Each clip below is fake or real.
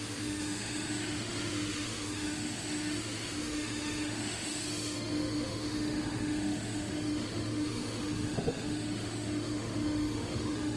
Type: fake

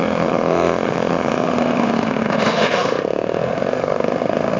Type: fake